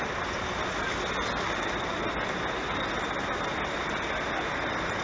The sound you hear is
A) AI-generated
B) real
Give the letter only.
B